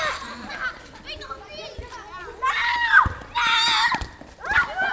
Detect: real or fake real